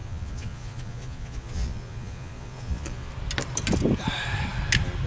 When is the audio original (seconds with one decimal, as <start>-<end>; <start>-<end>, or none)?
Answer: 3.1-5.1